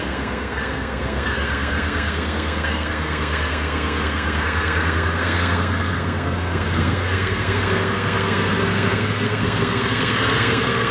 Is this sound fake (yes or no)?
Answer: yes